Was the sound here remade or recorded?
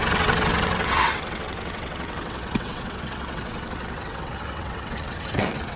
remade